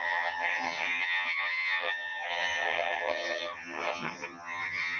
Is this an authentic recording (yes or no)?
no